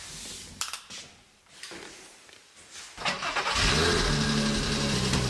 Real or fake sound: real